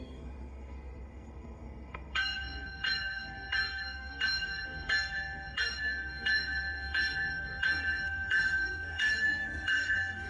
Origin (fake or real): fake